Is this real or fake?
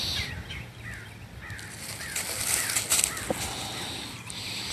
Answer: real